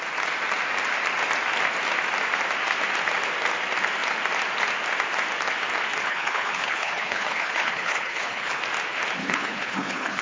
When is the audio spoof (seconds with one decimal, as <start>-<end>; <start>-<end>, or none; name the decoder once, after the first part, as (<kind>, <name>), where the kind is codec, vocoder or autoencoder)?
6.0-8.6 (codec, HILCodec); 9.2-10.2